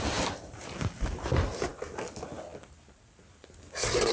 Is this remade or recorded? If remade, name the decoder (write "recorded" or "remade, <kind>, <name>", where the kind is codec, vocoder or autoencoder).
recorded